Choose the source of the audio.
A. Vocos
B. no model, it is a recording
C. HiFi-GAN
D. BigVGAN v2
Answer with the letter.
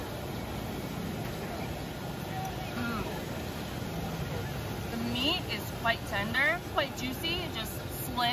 B